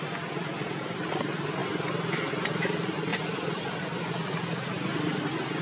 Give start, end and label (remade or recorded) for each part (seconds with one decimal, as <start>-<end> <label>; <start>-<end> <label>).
0.0-5.6 recorded